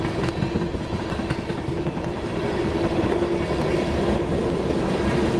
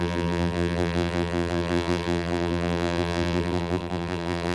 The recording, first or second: first